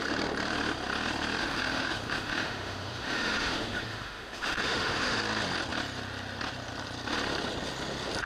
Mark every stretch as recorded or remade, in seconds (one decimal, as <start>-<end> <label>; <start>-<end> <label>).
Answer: 0.0-1.4 recorded; 1.4-5.2 remade; 5.2-8.3 recorded